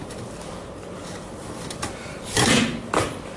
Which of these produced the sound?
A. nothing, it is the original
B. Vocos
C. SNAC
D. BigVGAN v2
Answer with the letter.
D